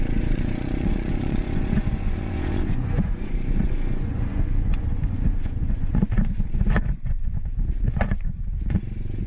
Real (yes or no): no